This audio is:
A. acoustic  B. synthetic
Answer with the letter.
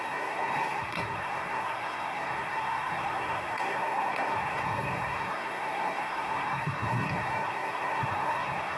B